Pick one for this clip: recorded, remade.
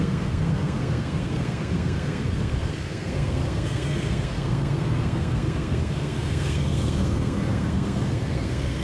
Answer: remade